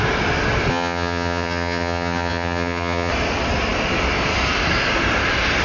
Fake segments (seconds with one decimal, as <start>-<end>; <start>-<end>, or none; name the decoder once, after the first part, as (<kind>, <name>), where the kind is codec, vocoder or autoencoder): 0.7-3.1 (vocoder, HiFi-GAN)